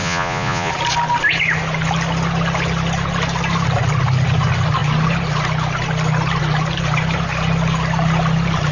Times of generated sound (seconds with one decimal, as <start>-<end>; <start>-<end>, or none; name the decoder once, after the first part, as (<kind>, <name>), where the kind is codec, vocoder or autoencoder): 0.0-0.7 (vocoder, Vocos)